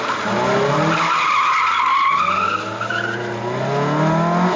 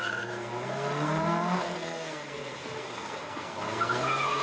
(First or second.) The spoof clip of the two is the second